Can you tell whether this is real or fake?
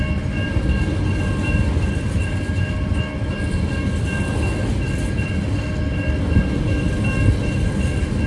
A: real